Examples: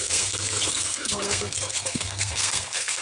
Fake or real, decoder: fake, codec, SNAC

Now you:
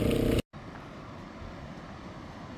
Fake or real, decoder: real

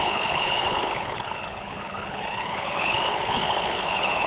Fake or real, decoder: fake, codec, HILCodec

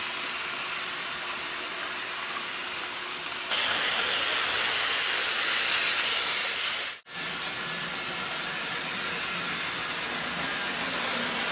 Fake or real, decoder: real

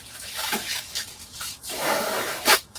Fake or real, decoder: fake, autoencoder, DAC-VAE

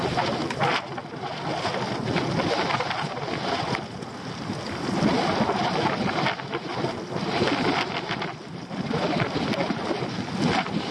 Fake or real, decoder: real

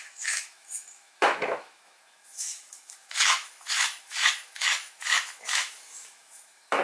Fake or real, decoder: fake, autoencoder, DAC-VAE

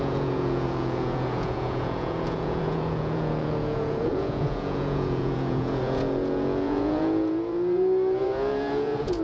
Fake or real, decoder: fake, vocoder, Vocos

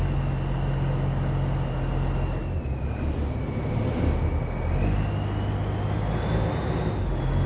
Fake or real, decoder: real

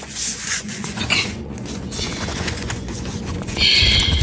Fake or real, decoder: fake, vocoder, Vocos